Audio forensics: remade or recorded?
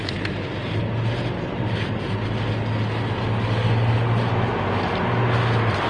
recorded